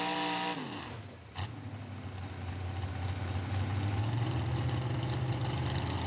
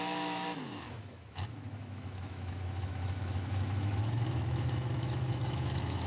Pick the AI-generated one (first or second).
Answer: second